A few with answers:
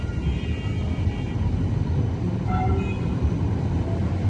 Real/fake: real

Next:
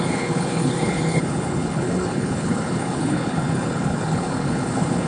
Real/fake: fake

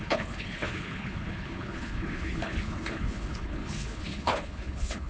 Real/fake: fake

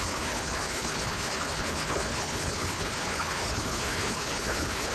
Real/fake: fake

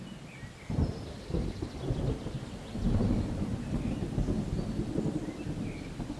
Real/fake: real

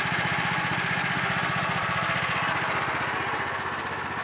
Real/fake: real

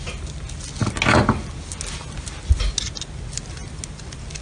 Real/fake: real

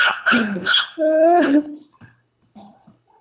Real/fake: fake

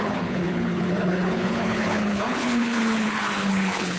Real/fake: fake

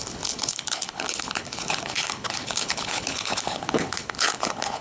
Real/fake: fake